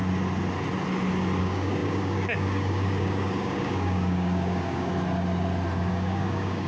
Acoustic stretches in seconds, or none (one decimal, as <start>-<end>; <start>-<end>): 0.0-1.4; 4.9-5.9